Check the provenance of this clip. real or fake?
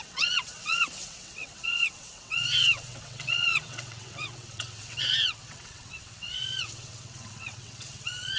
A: fake